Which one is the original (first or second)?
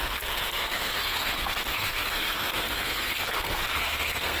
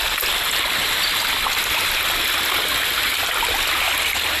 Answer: second